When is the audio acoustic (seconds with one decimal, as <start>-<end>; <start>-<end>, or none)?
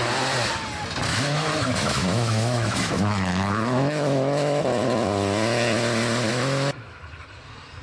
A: 0.0-1.1; 4.6-6.3; 7.0-7.8